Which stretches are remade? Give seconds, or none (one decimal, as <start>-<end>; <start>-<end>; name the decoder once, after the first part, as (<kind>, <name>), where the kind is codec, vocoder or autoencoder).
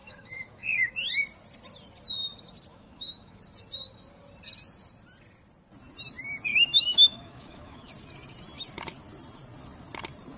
0.0-0.9 (autoencoder, DAC-VAE); 2.7-3.4; 6.5-7.9